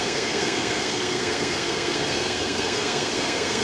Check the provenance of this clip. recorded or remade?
remade